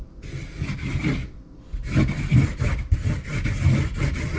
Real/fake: real